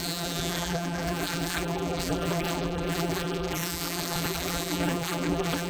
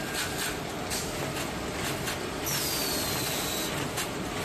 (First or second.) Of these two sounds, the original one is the second